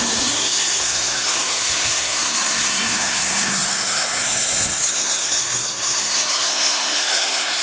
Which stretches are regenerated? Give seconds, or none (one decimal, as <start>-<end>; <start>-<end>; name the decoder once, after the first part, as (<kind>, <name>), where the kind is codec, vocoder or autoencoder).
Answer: 0.0-7.6 (codec, SNAC)